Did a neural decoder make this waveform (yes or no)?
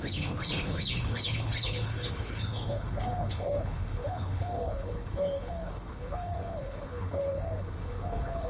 yes